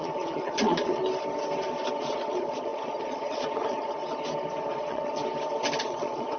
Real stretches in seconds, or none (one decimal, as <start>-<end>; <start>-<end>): 1.0-2.0; 4.0-4.7; 5.2-5.8